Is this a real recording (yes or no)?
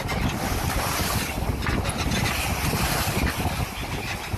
yes